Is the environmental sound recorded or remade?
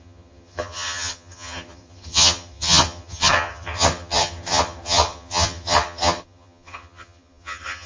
remade